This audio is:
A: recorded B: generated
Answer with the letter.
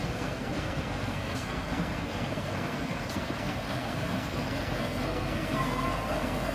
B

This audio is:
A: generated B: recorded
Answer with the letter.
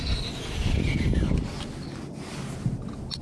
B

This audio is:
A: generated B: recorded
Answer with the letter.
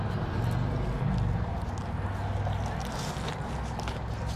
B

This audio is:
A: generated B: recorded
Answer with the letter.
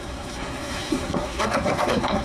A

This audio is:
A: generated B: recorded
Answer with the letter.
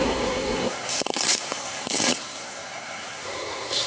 A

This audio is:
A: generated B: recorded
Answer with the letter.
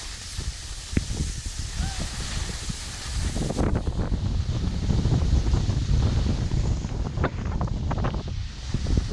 B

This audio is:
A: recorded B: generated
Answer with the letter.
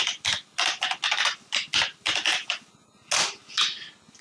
A